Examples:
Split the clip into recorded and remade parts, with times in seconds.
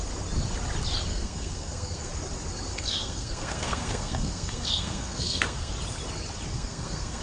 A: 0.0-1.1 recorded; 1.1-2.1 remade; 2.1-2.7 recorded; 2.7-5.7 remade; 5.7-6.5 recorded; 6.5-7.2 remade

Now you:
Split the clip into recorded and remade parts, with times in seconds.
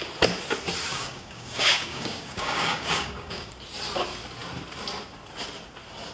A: 0.0-0.9 recorded; 0.9-3.5 remade; 3.5-6.1 recorded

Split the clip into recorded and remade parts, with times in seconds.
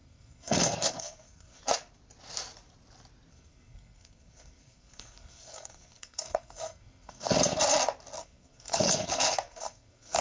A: 0.0-1.6 remade; 1.6-3.3 recorded; 3.3-7.3 remade; 7.3-8.2 recorded; 8.2-10.2 remade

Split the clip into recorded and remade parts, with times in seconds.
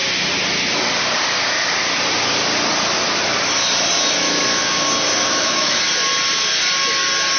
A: 0.0-5.3 recorded; 5.3-5.8 remade; 5.8-7.4 recorded